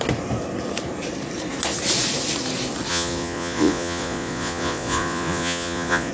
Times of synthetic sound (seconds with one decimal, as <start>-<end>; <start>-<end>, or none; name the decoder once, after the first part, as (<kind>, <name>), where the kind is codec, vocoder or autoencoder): 2.9-6.1 (vocoder, Vocos)